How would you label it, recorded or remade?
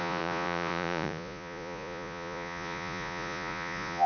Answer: remade